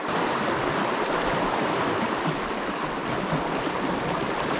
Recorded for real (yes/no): yes